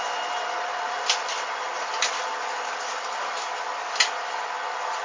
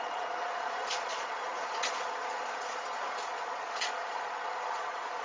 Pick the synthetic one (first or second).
second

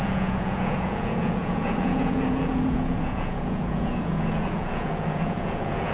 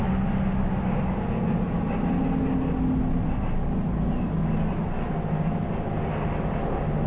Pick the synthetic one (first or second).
first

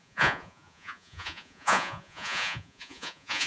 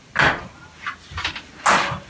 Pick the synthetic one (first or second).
first